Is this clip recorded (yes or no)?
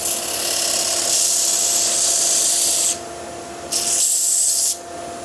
yes